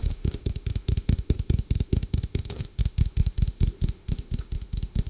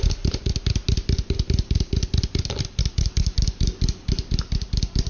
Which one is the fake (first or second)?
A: first